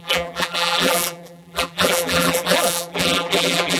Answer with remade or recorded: remade